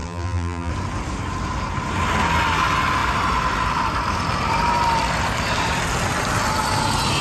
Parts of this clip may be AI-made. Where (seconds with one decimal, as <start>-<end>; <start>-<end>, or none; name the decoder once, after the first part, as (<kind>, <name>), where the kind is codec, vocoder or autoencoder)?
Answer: 0.0-0.7 (vocoder, BigVGAN v2)